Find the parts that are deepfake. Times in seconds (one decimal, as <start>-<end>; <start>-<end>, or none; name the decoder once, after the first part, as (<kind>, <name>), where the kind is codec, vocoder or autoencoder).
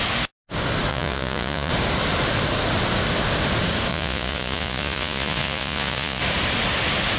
0.9-1.7 (vocoder, Vocos); 3.9-6.2